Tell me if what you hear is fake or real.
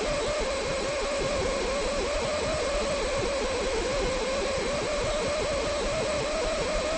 real